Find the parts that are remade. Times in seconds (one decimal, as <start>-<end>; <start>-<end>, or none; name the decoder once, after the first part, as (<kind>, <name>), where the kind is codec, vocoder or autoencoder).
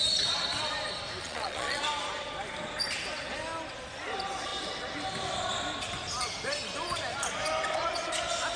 1.2-1.8 (vocoder, Vocos)